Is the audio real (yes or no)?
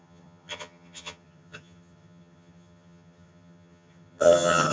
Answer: no